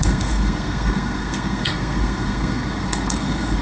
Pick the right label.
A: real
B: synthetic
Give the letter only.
B